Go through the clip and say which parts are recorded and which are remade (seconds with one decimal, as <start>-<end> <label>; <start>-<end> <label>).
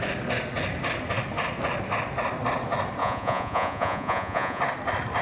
0.0-3.0 recorded; 3.0-4.6 remade; 4.6-5.2 recorded